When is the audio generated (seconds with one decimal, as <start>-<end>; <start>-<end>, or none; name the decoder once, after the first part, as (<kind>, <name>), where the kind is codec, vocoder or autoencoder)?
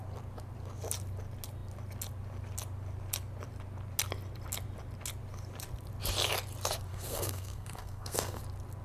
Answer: 6.9-8.4 (codec, SNAC)